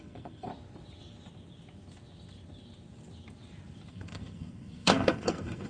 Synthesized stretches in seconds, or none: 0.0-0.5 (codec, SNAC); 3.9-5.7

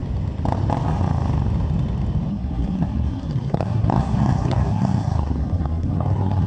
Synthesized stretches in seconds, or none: 2.3-6.5 (codec, SNAC)

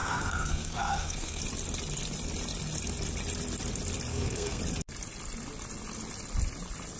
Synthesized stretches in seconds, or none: 0.0-1.4 (codec, SNAC); 4.1-4.6

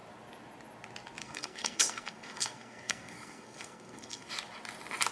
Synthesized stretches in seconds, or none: 1.2-4.3 (codec, SNAC)